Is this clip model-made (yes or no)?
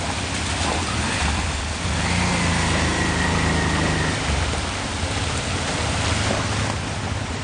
no